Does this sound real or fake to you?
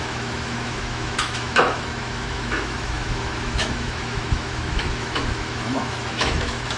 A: fake